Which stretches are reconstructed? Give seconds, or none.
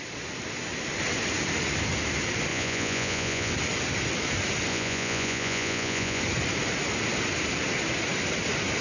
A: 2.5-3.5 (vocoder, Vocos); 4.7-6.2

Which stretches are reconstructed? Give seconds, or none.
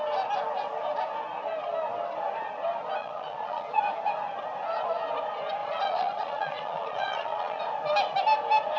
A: 3.0-3.8 (vocoder, Vocos); 5.6-7.6